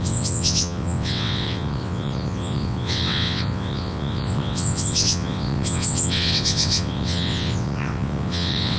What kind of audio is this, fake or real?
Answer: fake